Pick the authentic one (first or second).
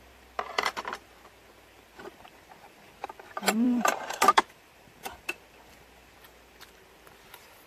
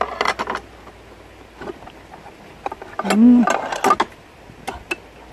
second